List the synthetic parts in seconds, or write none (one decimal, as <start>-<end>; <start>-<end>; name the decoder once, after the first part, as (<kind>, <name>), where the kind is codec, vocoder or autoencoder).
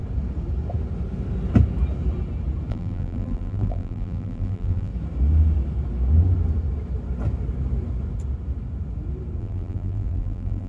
2.7-4.9 (vocoder, BigVGAN v2); 9.4-10.7